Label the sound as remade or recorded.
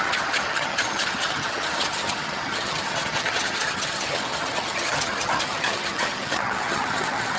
remade